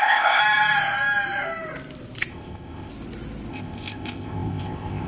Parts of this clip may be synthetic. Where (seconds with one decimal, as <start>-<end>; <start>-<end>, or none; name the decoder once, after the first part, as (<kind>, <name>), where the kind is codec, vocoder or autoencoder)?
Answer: 0.0-0.4 (codec, ZipCodec); 2.3-2.9; 3.5-5.1